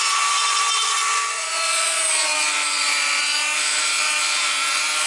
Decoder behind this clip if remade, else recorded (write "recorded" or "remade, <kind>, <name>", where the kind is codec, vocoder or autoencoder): remade, vocoder, Vocos